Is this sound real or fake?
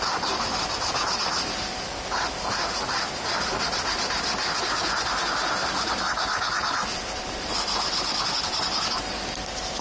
real